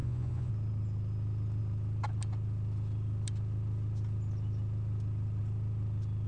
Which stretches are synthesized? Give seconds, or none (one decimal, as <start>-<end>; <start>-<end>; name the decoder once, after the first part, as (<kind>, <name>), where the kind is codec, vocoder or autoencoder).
0.0-0.5 (vocoder, Vocos)

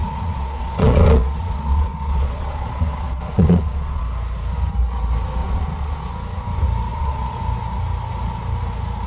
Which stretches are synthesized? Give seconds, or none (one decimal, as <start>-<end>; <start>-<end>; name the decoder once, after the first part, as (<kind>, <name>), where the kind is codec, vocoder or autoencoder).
0.0-4.0 (vocoder, Vocos); 5.4-6.1; 6.9-7.4

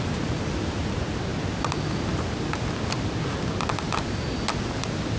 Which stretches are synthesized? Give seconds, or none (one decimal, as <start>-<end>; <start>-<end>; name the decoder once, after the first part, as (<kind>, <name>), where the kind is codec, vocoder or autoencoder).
none